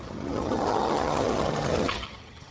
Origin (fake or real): fake